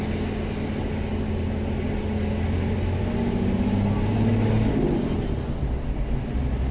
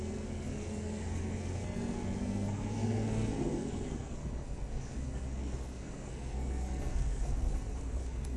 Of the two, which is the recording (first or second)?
first